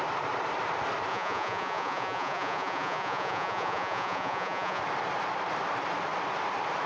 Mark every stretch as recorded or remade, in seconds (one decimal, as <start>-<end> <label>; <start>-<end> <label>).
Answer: 0.0-1.1 recorded; 1.1-4.8 remade; 4.8-6.9 recorded